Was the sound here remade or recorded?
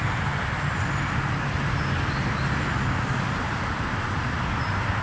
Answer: recorded